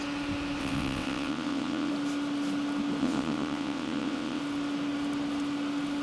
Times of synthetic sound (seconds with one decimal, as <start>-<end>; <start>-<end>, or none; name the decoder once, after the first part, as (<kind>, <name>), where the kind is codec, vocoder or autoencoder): 0.6-1.9 (vocoder, WaveNeXt); 3.0-4.4